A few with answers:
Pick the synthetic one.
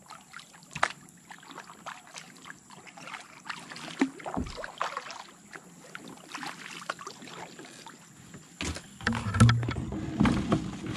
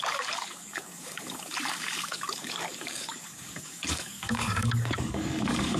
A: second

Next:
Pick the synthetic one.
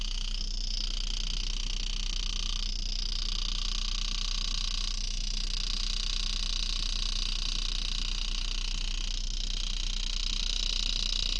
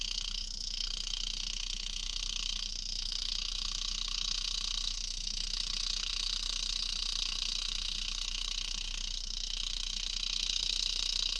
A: second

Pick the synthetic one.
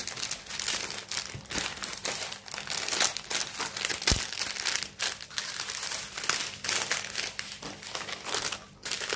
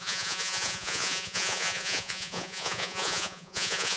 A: second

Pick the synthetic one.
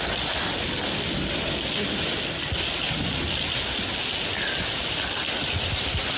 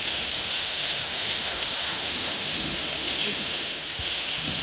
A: second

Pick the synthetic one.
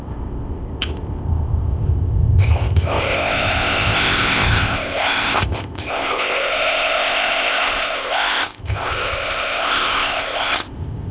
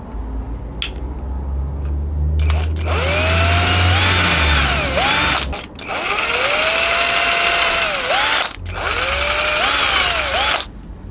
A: first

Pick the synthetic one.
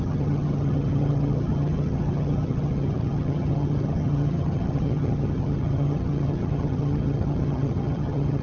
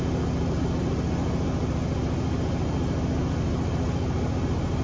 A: first